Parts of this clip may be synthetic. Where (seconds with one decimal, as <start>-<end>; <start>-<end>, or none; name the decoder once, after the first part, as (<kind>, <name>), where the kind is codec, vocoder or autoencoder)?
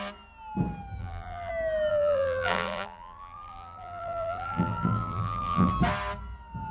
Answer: 1.0-1.5 (vocoder, BigVGAN v2); 1.9-5.7